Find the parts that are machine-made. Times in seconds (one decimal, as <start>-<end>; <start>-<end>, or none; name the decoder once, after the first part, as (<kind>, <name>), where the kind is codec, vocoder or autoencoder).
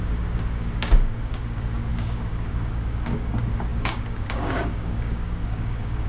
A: 0.0-6.1 (codec, DAC)